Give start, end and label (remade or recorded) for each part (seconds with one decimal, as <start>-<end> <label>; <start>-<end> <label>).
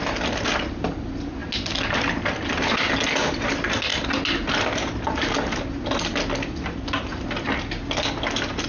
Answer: 0.0-8.7 recorded